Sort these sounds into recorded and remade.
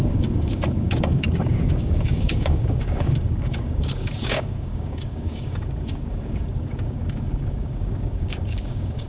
remade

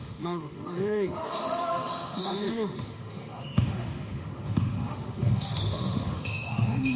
remade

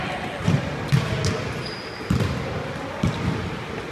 recorded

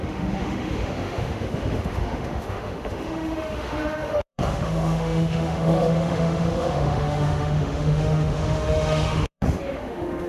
remade